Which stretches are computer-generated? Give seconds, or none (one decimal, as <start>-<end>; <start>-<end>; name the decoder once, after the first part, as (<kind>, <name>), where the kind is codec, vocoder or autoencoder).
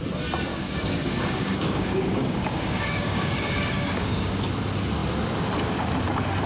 0.5-4.4 (codec, DAC)